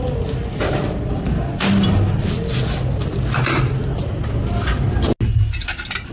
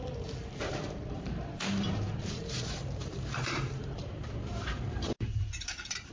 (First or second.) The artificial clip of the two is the second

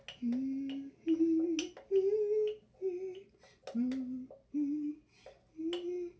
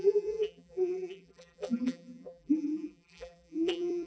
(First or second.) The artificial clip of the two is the second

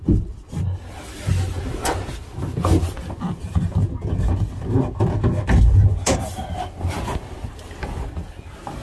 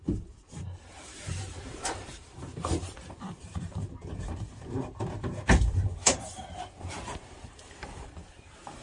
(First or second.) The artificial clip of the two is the second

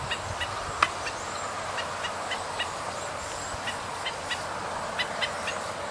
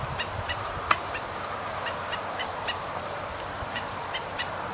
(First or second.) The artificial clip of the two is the second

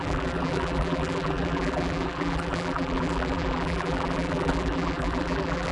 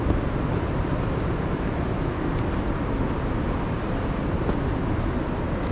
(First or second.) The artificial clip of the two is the first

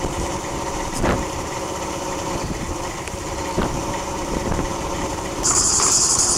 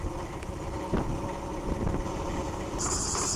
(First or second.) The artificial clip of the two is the first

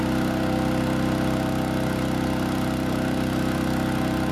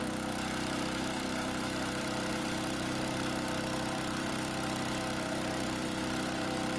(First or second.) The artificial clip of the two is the second